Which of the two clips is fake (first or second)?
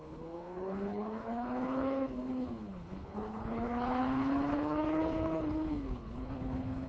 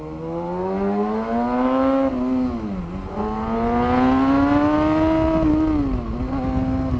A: first